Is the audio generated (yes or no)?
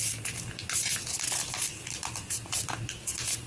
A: no